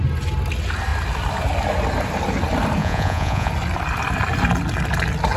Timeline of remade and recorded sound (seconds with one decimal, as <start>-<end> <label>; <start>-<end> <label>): 0.0-2.8 recorded; 2.8-3.5 remade; 3.5-5.4 recorded